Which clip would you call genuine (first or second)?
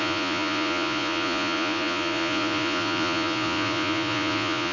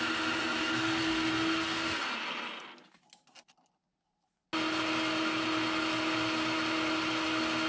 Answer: second